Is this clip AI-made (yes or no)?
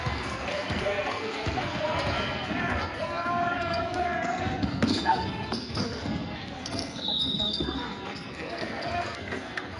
yes